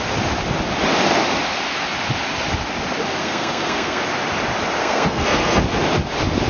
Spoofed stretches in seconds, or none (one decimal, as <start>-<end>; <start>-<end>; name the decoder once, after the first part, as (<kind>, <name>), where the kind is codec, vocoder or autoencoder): 3.2-4.0 (codec, SNAC); 4.8-5.6